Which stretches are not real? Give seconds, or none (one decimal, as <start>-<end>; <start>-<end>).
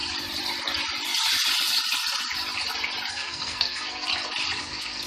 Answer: 3.1-4.1; 4.6-5.1